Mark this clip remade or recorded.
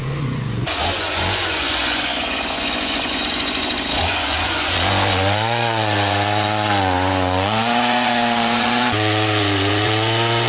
remade